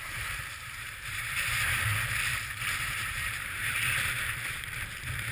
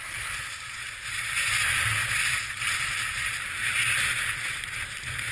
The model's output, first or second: first